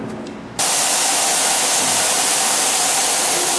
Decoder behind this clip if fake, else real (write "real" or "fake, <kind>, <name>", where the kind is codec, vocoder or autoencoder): real